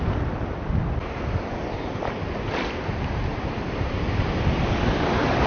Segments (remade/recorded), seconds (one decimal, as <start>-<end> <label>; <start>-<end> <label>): 0.0-3.3 recorded; 3.3-5.5 remade

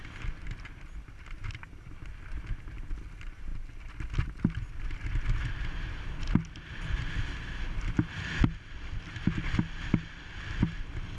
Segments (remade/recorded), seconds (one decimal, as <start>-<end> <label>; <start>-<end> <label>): 0.0-11.2 recorded